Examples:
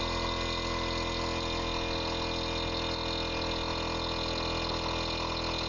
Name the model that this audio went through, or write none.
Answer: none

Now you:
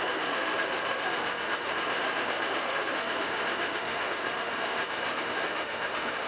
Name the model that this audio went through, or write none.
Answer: autoencoder, DAC-VAE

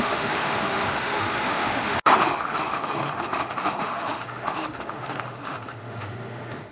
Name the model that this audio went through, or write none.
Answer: autoencoder, DAC-VAE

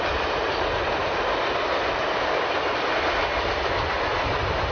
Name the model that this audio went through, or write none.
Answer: none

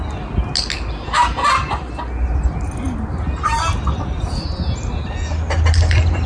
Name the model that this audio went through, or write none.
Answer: none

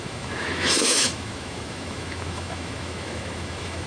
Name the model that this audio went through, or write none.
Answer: autoencoder, DAC-VAE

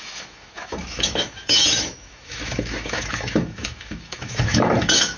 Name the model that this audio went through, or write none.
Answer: autoencoder, DAC-VAE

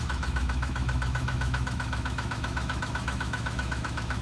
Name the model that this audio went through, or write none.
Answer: autoencoder, DAC-VAE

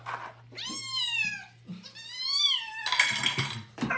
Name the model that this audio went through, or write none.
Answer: none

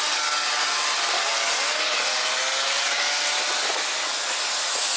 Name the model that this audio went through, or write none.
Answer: none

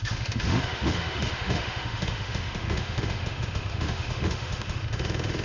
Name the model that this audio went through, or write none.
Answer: autoencoder, DAC-VAE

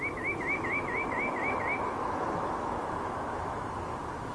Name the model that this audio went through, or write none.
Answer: autoencoder, DAC-VAE